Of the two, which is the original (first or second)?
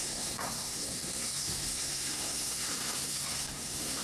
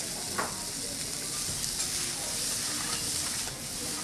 second